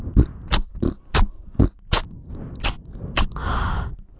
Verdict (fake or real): real